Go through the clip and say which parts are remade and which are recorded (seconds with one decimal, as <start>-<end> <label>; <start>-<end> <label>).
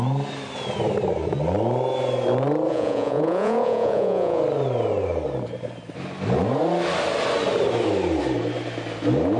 0.0-2.7 recorded; 2.7-4.4 remade; 4.4-9.4 recorded